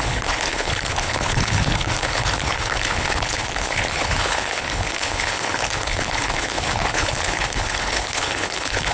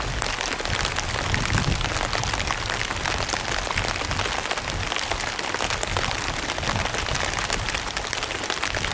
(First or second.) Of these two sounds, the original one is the second